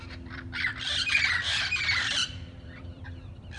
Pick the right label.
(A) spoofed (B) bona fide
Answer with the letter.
A